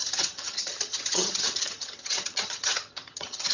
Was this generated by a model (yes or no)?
yes